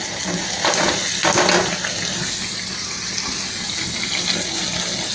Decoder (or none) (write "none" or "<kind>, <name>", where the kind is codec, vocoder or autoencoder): none